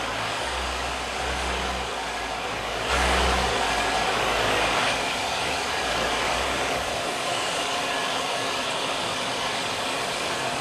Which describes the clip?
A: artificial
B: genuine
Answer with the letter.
A